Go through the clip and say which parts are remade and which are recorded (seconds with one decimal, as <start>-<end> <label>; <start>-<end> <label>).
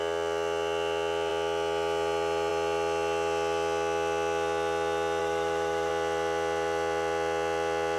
0.0-5.2 recorded; 5.2-5.9 remade; 5.9-8.0 recorded